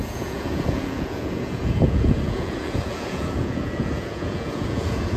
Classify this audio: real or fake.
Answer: fake